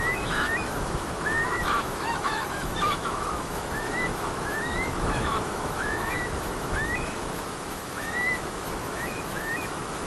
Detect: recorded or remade remade